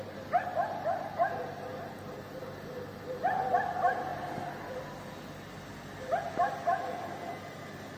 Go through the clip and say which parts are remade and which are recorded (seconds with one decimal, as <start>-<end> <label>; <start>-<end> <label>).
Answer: 0.0-8.0 recorded